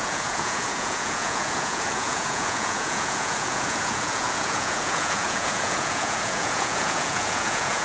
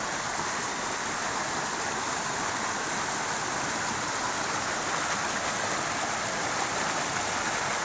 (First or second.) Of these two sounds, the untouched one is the second